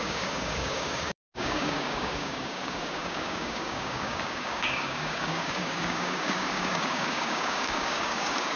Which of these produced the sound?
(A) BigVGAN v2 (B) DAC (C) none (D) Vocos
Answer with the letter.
B